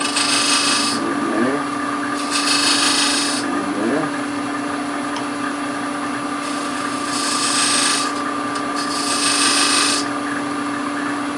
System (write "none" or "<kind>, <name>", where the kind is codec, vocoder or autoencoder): none